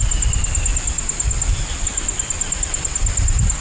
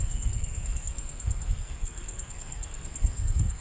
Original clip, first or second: first